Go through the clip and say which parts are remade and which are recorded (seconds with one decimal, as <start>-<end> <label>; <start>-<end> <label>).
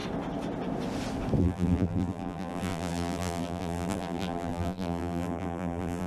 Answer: 0.0-1.4 recorded; 1.4-6.1 remade